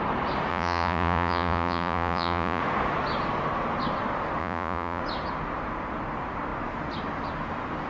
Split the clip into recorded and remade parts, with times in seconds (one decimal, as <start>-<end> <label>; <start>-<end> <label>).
0.0-0.5 recorded; 0.5-2.6 remade; 2.6-4.4 recorded; 4.4-5.0 remade; 5.0-7.9 recorded